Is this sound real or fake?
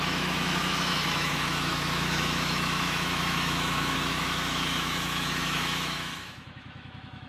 fake